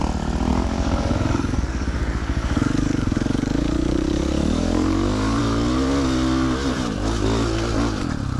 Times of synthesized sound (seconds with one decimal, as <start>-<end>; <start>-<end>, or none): 0.5-5.4